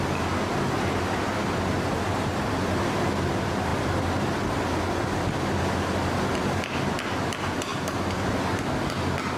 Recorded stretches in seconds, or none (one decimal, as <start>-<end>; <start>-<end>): 0.0-9.4